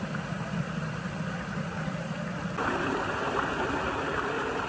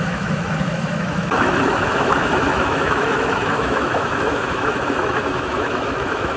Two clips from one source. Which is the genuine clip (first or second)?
first